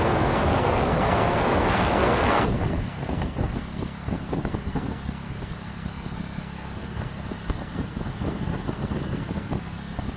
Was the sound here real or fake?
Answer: fake